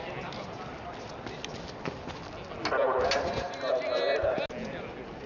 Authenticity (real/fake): real